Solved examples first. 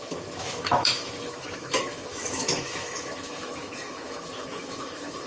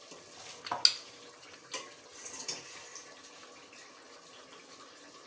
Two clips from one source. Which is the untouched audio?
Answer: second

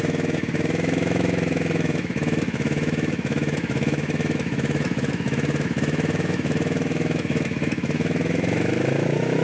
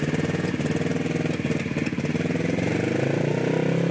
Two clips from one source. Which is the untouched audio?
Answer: second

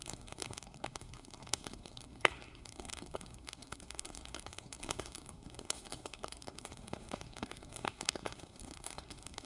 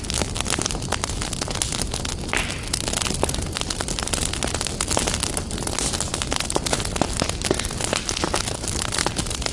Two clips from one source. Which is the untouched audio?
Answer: second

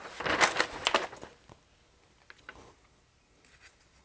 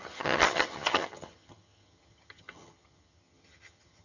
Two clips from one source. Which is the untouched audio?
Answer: first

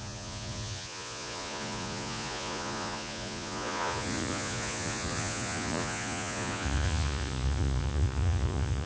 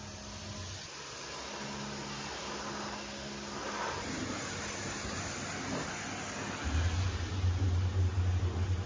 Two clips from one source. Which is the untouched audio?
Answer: second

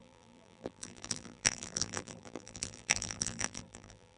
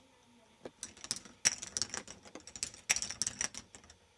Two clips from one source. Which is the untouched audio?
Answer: second